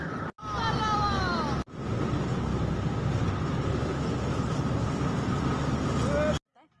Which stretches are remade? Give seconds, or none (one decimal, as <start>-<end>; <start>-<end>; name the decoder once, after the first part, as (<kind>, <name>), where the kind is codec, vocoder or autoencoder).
none